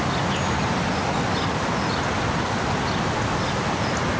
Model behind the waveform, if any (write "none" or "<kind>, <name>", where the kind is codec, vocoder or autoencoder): none